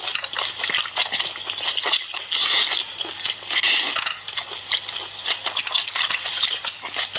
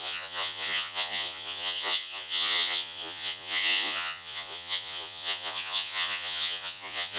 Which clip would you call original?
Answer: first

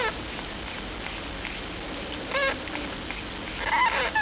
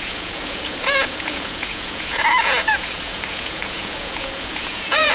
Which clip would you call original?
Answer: first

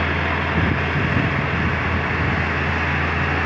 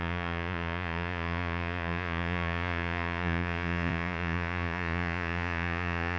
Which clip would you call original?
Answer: first